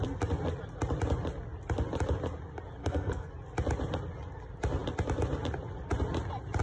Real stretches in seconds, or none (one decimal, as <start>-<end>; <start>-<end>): 0.0-2.8; 3.3-6.6

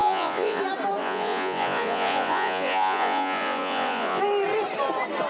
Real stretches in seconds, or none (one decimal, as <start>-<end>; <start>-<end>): 0.6-1.0; 4.2-5.3

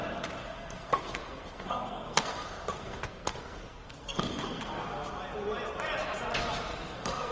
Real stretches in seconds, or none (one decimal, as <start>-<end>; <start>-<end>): 0.0-0.4; 4.8-6.7